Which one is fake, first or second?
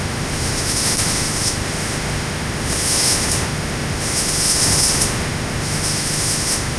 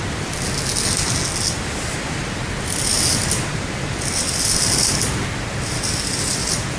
first